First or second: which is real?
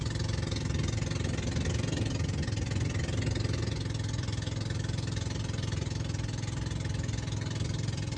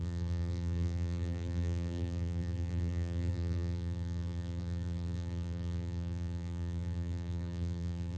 first